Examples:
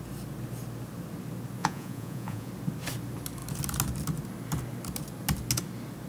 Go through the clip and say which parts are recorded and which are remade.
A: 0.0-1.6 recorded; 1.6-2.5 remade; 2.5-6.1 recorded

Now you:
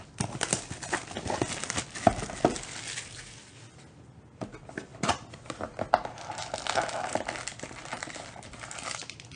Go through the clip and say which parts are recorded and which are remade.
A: 0.0-9.3 recorded

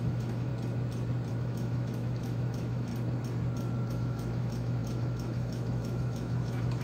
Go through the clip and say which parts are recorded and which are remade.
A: 0.0-0.5 remade; 0.5-1.3 recorded; 1.3-2.9 remade; 2.9-3.9 recorded; 3.9-6.8 remade

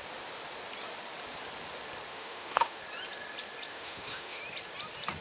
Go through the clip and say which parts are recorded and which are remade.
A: 0.0-2.1 recorded; 2.1-2.8 remade; 2.8-3.7 recorded; 3.7-4.4 remade; 4.4-5.2 recorded